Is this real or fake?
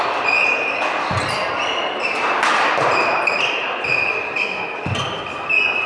real